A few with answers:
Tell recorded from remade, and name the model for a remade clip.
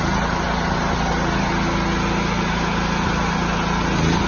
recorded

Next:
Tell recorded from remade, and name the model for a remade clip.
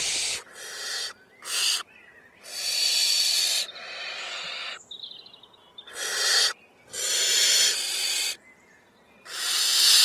recorded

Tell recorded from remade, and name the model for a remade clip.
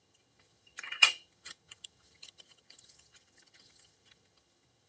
remade, vocoder, HiFi-GAN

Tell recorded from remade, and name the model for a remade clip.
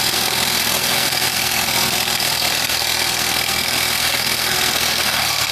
remade, codec, SNAC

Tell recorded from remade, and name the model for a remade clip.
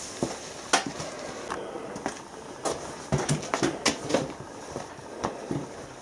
recorded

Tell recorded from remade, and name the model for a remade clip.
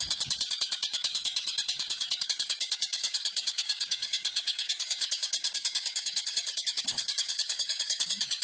remade, codec, DAC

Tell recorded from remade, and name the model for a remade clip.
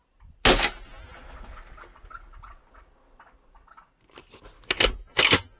recorded